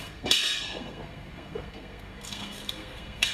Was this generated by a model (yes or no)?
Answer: yes